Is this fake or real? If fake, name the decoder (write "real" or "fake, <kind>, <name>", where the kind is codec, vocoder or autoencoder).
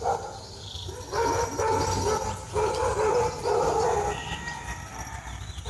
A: real